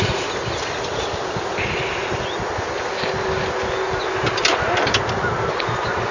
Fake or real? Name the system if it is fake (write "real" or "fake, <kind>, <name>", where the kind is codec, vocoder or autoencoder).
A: real